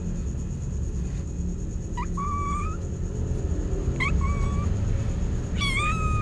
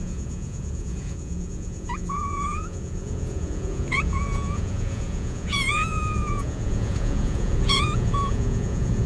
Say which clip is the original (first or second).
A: first